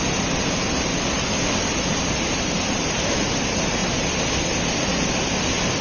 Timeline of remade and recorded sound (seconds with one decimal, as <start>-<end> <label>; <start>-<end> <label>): 0.0-5.8 recorded